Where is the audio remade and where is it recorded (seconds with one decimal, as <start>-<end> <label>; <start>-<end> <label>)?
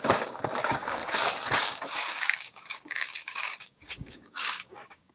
0.0-1.0 remade; 1.0-1.6 recorded; 1.6-5.1 remade